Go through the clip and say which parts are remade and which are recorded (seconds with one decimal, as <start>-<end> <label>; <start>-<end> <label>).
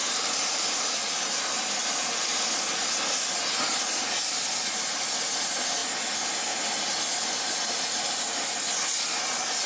0.0-1.0 remade; 1.0-9.7 recorded